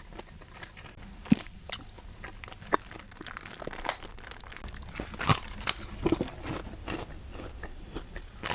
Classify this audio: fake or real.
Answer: fake